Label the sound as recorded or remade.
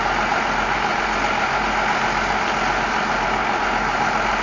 recorded